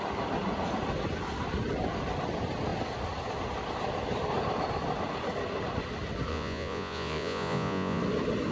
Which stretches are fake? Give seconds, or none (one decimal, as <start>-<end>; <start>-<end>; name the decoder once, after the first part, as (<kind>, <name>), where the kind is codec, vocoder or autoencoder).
6.3-8.0 (vocoder, Vocos)